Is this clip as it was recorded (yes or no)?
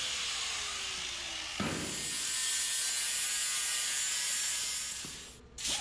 yes